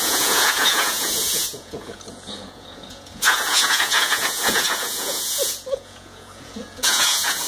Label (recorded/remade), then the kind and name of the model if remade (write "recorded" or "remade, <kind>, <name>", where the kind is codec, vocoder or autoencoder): remade, vocoder, Vocos